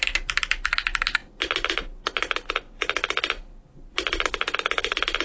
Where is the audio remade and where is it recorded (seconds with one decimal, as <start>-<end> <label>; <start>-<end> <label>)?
0.0-5.2 recorded